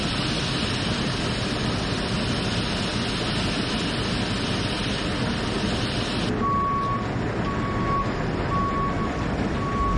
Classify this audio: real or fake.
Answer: real